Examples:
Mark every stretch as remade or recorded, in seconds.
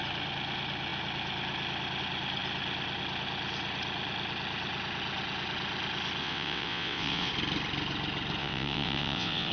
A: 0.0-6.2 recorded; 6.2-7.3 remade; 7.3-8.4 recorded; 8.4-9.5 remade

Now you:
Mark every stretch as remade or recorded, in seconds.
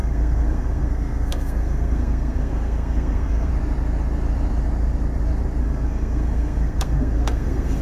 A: 0.0-3.5 remade; 3.5-5.6 recorded; 5.6-7.8 remade